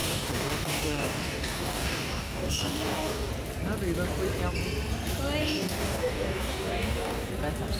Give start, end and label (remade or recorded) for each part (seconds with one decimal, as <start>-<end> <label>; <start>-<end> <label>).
0.0-3.3 remade; 3.3-5.4 recorded; 5.4-7.3 remade; 7.3-7.8 recorded